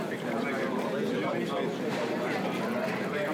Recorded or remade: recorded